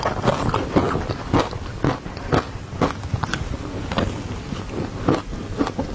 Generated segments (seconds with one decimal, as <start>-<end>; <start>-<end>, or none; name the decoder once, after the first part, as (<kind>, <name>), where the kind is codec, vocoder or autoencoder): none